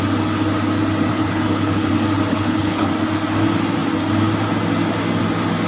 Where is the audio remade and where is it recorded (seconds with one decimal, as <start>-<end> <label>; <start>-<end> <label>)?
0.0-1.1 recorded; 1.1-1.9 remade; 1.9-2.3 recorded; 2.3-2.9 remade; 2.9-5.7 recorded